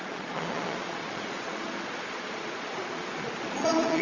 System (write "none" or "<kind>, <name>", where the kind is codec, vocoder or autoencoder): vocoder, Vocos